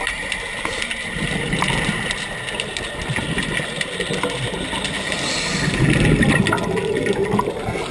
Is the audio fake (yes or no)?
no